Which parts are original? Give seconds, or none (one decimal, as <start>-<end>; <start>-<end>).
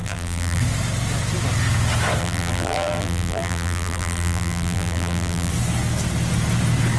0.6-2.2; 5.5-7.0